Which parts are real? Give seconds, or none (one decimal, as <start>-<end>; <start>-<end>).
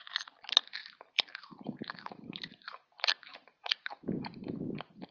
0.0-0.8; 3.9-5.1